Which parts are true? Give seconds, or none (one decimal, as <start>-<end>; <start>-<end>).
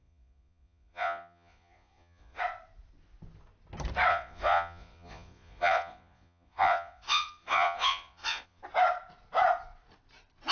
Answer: 2.4-4.1; 8.6-10.5